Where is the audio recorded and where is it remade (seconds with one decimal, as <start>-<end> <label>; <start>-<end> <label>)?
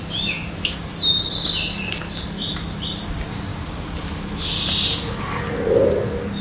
0.0-0.9 recorded; 0.9-2.0 remade; 2.0-3.5 recorded; 3.5-5.4 remade; 5.4-6.4 recorded